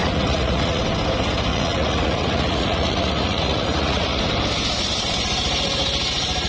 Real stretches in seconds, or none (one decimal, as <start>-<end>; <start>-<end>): 0.8-1.5; 4.2-6.5